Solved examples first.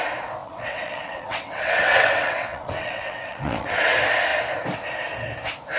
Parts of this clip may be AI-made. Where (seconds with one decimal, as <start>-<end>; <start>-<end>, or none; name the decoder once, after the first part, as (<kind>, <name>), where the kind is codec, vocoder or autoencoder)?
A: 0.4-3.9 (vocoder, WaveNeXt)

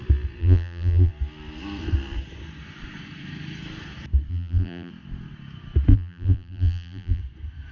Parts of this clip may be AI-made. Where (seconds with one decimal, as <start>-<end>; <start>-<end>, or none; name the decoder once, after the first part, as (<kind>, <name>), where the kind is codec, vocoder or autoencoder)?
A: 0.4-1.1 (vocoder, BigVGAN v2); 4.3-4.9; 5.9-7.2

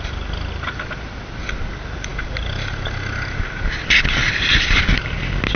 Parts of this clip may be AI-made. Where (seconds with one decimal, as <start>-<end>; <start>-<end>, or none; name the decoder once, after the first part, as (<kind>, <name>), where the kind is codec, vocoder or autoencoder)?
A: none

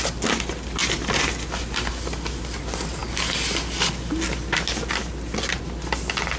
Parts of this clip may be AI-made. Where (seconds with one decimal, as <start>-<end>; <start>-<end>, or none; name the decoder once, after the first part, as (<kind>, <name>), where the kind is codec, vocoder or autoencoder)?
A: none

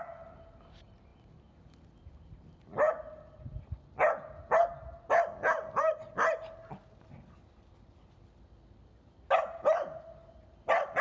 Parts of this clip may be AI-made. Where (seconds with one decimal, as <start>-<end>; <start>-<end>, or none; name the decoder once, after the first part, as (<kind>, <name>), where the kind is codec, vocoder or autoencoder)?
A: none

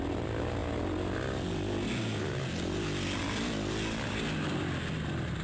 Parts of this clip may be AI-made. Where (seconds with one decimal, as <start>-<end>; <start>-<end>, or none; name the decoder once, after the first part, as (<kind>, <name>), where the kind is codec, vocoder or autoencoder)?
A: none

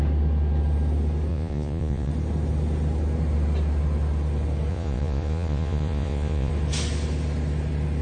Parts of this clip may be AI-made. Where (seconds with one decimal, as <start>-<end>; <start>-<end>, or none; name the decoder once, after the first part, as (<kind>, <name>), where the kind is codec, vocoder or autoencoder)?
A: 1.3-2.1 (vocoder, Vocos); 4.7-6.5

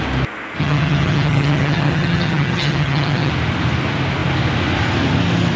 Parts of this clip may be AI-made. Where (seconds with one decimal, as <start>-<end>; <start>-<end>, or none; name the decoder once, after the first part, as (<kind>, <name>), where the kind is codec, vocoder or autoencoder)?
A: 0.6-3.3 (vocoder, HiFi-GAN)